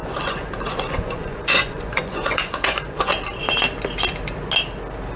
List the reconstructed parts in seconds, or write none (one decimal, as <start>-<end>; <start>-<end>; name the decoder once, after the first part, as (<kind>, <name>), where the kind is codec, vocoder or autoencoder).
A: 0.0-3.1 (vocoder, Vocos)